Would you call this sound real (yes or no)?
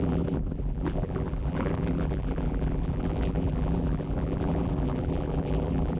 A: no